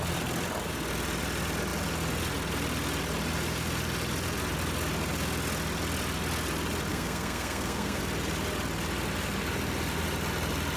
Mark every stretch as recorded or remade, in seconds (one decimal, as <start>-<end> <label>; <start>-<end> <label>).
0.0-6.9 recorded; 6.9-8.0 remade; 8.0-10.8 recorded